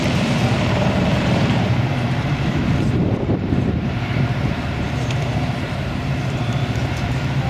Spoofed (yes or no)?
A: yes